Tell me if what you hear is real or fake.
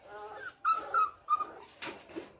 real